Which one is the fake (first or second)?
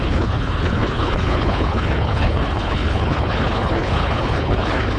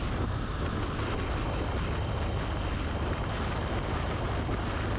first